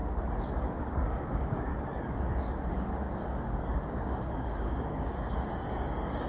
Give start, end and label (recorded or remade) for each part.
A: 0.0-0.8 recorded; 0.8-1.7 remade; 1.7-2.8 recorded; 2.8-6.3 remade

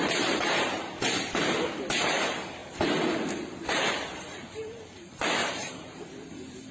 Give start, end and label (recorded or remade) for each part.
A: 0.0-0.8 remade; 0.8-1.9 recorded; 1.9-2.6 remade; 2.6-3.3 recorded; 3.3-6.7 remade

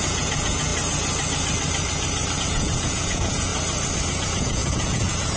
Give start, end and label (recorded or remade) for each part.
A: 0.0-0.7 remade; 0.7-2.4 recorded; 2.4-3.5 remade; 3.5-4.1 recorded; 4.1-5.4 remade

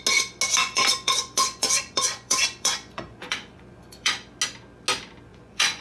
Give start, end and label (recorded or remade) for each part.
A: 0.0-0.6 recorded; 0.6-4.1 remade; 4.1-5.3 recorded; 5.3-5.8 remade

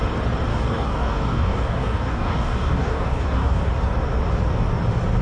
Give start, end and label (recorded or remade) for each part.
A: 0.0-0.5 recorded; 0.5-3.6 remade; 3.6-5.2 recorded